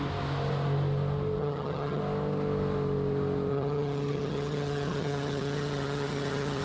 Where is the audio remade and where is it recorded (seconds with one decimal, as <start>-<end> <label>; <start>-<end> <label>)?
0.0-1.4 recorded; 1.4-2.0 remade; 2.0-3.5 recorded; 3.5-6.6 remade

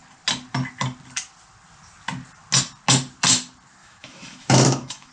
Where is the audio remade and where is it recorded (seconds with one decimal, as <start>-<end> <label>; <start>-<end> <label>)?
0.0-3.8 recorded; 3.8-5.1 remade

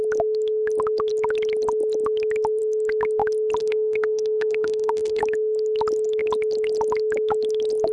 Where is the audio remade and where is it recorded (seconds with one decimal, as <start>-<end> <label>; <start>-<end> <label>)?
0.0-3.6 recorded; 3.6-5.2 remade; 5.2-7.9 recorded

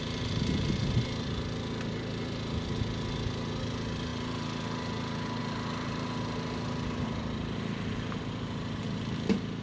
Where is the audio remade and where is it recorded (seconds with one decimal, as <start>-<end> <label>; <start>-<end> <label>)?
0.0-9.6 recorded